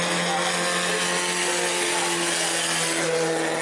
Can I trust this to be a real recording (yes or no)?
yes